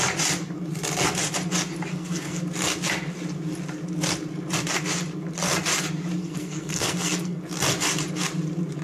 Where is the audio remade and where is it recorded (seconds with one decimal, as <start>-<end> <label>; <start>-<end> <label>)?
0.0-1.9 recorded; 1.9-2.4 remade; 2.4-6.2 recorded; 6.2-7.4 remade; 7.4-8.8 recorded